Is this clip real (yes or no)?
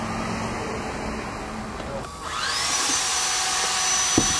yes